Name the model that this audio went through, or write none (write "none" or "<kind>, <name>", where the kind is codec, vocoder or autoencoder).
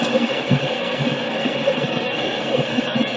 codec, SNAC